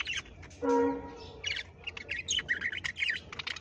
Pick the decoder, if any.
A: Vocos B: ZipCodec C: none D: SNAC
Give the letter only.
C